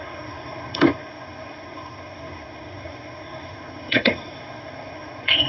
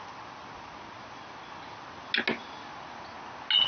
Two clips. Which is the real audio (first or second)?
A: second